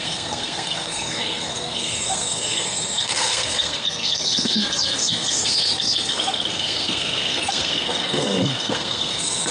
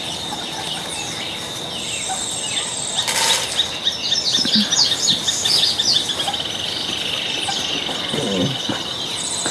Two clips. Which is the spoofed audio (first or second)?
first